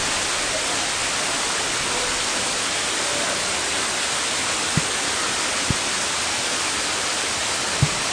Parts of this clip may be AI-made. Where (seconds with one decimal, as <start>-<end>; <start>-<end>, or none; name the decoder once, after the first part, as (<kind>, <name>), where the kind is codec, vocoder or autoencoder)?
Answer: none